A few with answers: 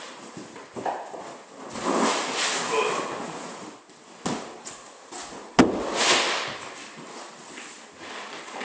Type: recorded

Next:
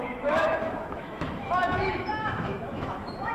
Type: remade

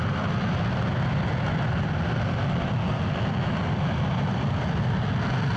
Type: recorded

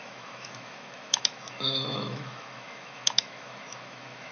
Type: remade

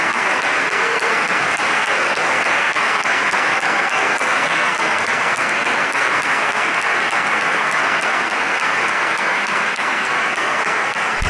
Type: remade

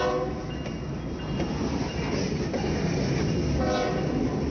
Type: recorded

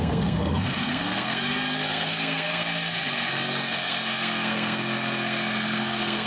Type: remade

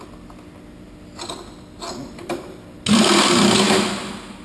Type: recorded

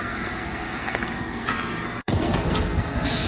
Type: remade